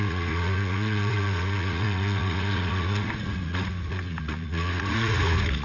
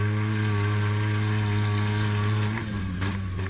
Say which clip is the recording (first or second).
second